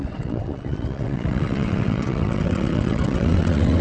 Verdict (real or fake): fake